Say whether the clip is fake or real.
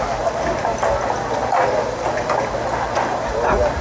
real